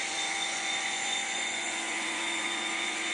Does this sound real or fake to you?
fake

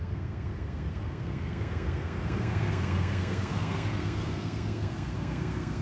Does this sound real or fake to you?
fake